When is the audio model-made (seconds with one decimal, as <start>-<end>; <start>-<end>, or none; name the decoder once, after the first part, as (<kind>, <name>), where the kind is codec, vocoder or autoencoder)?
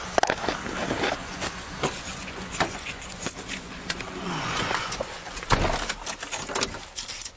1.2-5.6 (vocoder, Vocos)